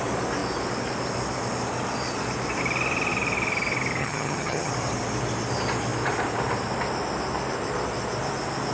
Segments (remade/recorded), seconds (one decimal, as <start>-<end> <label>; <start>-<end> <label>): 0.0-4.0 recorded; 4.0-4.7 remade; 4.7-8.7 recorded